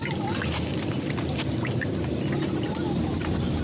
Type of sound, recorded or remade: recorded